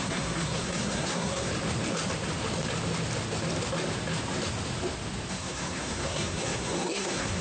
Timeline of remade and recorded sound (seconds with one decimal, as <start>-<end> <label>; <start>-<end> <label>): 0.0-1.5 remade; 1.5-5.3 recorded; 5.3-7.4 remade